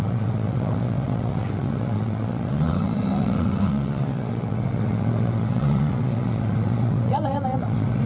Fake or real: fake